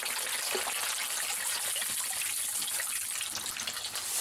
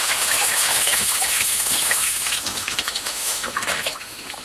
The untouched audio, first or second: first